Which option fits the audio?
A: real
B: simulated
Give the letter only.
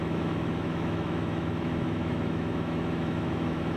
B